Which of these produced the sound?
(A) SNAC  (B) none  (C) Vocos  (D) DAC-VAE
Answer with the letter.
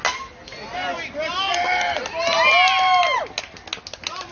B